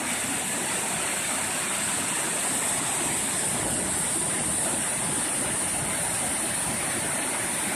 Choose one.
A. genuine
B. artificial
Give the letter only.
A